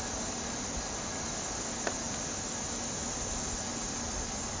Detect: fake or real real